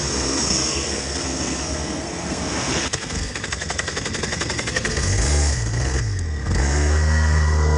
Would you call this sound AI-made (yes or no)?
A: yes